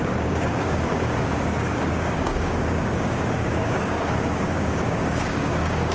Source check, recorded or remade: remade